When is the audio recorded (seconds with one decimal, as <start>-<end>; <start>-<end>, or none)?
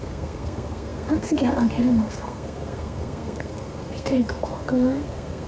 none